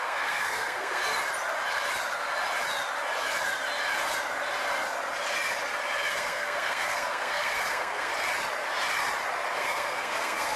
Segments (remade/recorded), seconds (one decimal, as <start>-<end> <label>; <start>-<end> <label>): 0.0-1.0 remade; 1.0-6.1 recorded; 6.1-8.1 remade; 8.1-9.5 recorded; 9.5-10.6 remade